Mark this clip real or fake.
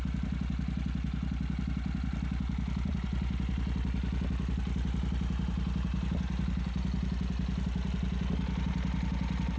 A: real